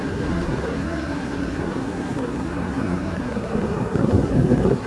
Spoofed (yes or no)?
yes